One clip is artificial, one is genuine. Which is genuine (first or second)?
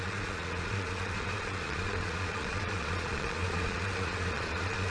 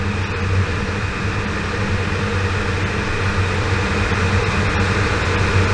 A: second